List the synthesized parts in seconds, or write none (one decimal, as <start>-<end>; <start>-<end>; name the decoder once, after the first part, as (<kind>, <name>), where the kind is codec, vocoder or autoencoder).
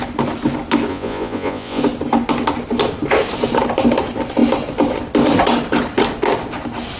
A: 0.9-1.8 (vocoder, Vocos)